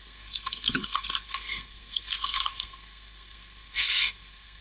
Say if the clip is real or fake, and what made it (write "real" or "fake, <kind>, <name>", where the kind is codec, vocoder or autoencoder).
fake, codec, SNAC